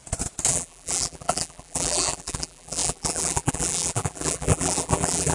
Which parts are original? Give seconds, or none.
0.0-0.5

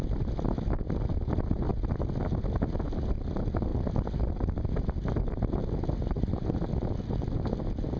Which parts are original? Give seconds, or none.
0.0-8.0

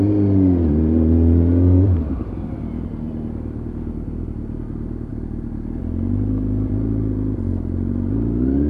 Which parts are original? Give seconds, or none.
0.0-8.7

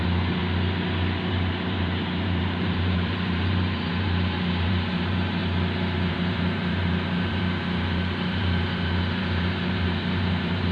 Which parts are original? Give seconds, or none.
0.4-1.3; 5.4-6.1

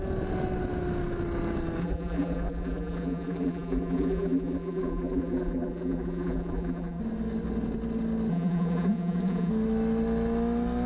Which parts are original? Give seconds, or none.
0.0-1.8; 7.0-8.3; 9.5-10.9

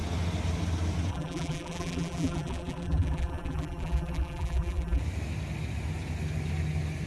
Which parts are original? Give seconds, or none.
0.0-1.1; 5.0-7.1

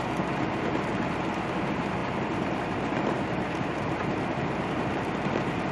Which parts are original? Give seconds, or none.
0.9-1.6